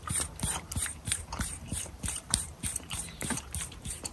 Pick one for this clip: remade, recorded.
remade